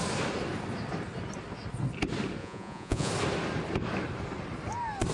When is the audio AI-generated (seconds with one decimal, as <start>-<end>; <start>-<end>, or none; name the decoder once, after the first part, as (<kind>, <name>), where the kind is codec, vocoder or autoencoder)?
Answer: 2.4-3.1 (vocoder, Vocos)